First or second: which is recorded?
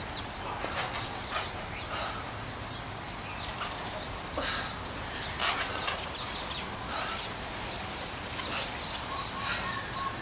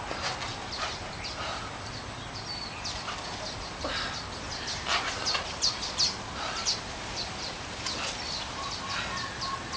first